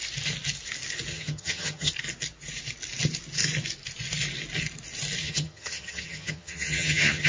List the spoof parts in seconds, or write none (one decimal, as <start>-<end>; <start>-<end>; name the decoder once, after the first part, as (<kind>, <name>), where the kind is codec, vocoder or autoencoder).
1.1-1.9 (vocoder, HiFi-GAN); 5.2-7.3